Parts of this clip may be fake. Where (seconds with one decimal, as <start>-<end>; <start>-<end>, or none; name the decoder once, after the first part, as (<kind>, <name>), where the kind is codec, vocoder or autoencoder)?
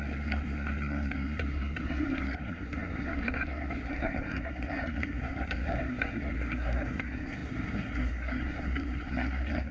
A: 0.0-9.7 (codec, SNAC)